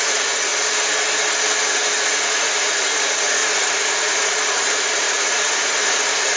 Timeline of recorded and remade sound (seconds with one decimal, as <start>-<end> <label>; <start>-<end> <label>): 0.0-0.5 remade; 0.5-2.0 recorded; 2.0-6.4 remade